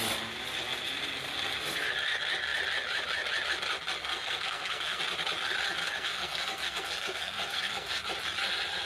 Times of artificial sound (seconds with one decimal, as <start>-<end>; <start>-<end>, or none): 4.0-5.0; 5.8-8.0

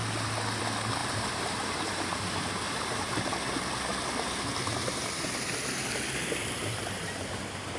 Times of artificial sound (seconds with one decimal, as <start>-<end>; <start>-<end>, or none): 1.0-3.2

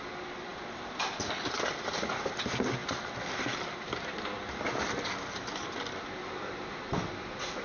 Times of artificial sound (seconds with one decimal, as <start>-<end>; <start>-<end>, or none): none

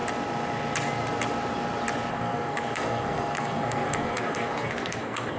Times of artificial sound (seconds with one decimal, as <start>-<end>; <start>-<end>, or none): 2.1-5.4

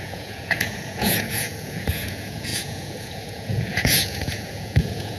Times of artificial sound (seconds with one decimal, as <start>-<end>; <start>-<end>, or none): 0.0-5.2

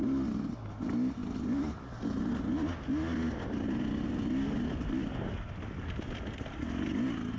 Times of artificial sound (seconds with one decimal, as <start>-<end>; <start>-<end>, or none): none

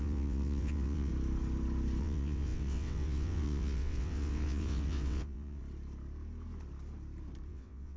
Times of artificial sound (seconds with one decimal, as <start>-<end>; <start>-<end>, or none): 0.0-1.1; 2.0-5.6; 7.5-8.0